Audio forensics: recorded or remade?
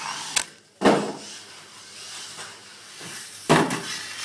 recorded